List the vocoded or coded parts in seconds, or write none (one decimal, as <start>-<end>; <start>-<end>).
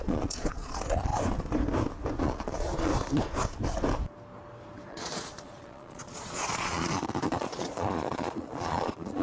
0.0-1.1; 2.2-2.9; 4.9-9.2